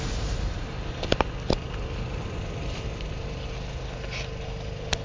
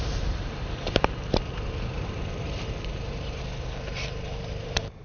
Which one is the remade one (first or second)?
second